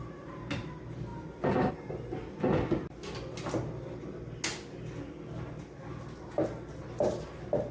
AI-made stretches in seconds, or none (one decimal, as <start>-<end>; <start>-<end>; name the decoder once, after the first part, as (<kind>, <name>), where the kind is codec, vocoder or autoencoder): none